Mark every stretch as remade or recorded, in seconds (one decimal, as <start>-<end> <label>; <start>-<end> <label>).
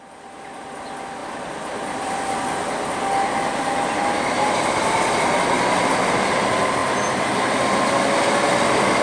0.0-1.2 recorded; 1.2-2.4 remade; 2.4-9.0 recorded